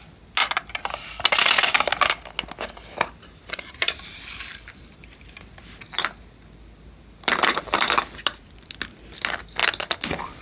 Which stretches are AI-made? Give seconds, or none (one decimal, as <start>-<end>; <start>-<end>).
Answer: none